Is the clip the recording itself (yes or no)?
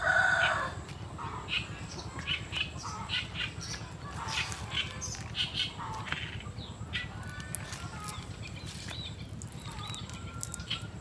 yes